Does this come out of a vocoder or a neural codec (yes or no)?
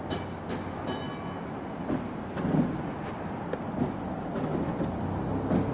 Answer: no